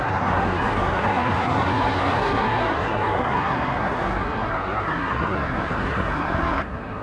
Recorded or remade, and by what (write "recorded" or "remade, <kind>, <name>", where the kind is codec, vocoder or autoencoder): remade, codec, SNAC